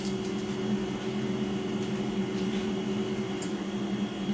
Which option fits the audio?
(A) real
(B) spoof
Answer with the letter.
A